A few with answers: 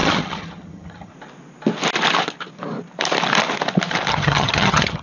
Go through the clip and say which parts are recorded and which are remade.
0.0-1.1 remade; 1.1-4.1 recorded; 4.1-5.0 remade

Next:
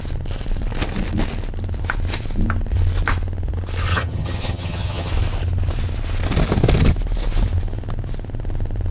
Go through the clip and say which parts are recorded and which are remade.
0.0-3.9 recorded; 3.9-5.1 remade; 5.1-8.9 recorded

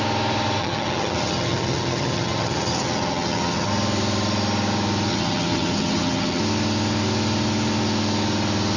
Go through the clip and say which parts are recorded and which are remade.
0.0-0.6 recorded; 0.6-3.7 remade; 3.7-5.1 recorded; 5.1-6.4 remade; 6.4-8.8 recorded

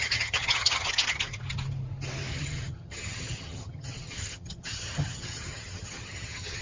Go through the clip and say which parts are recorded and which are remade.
0.0-0.9 remade; 0.9-2.3 recorded; 2.3-6.6 remade

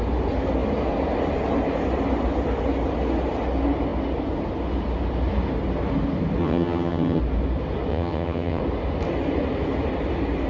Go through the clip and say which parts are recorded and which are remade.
0.0-6.4 recorded; 6.4-7.2 remade; 7.2-7.9 recorded; 7.9-8.6 remade; 8.6-10.5 recorded

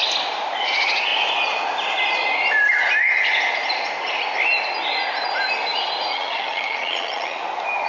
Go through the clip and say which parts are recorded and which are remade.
0.0-6.1 recorded; 6.1-7.4 remade; 7.4-7.9 recorded

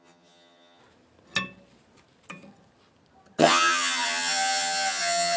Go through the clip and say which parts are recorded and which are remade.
0.0-0.8 remade; 0.8-3.4 recorded; 3.4-5.4 remade